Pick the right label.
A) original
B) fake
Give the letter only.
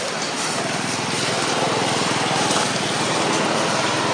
A